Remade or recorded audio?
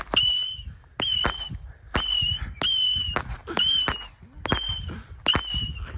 recorded